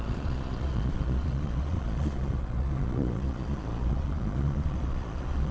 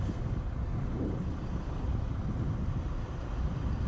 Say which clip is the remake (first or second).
first